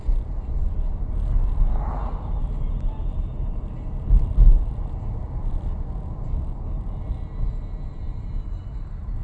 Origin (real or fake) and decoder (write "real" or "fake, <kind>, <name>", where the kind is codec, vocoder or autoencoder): real